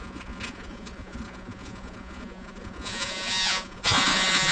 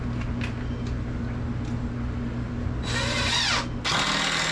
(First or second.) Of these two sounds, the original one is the second